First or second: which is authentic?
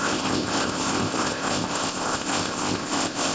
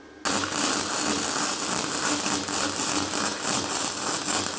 second